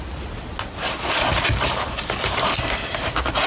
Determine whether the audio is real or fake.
real